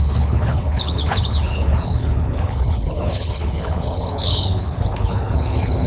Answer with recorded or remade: remade